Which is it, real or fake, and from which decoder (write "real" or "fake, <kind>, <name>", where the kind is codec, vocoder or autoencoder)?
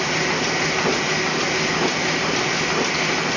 real